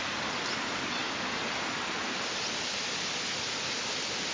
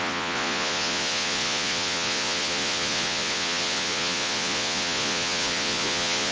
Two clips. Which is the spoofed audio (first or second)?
second